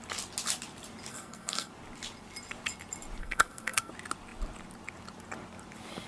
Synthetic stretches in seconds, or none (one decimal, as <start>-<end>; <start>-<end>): 1.1-1.7; 3.2-3.9